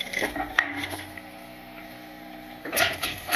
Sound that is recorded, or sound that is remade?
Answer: remade